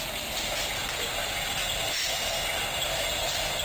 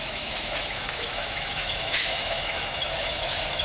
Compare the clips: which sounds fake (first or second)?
second